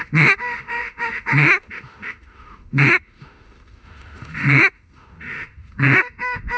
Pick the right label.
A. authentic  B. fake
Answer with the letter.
B